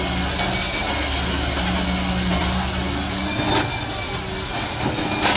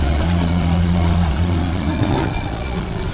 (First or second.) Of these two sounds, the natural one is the first